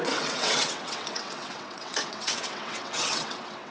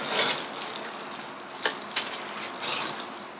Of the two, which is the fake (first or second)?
first